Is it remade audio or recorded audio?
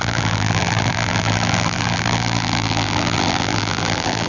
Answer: remade